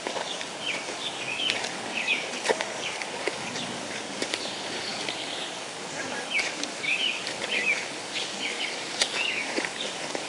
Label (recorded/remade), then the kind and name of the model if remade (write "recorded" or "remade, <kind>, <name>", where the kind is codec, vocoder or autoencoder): remade, codec, DAC